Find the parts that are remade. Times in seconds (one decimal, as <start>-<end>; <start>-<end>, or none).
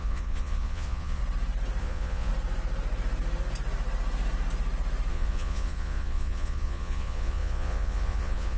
0.0-1.2; 1.8-2.3; 5.1-8.6